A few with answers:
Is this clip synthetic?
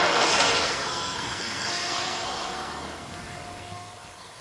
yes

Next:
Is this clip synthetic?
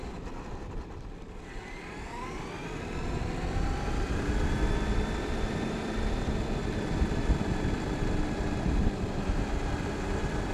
yes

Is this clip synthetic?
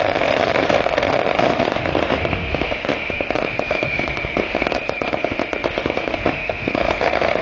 yes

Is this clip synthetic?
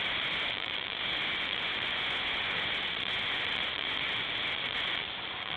yes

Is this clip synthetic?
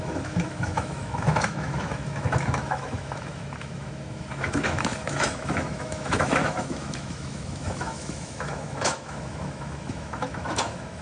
yes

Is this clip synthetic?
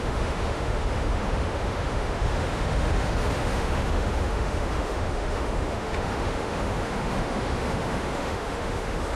yes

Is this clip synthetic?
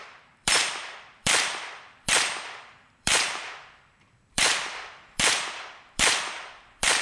yes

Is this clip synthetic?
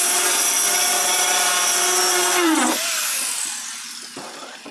no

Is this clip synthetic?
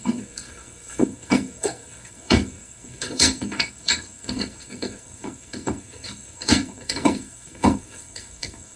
yes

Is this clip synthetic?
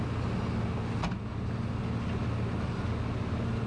no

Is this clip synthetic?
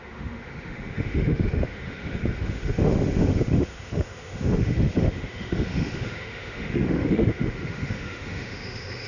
yes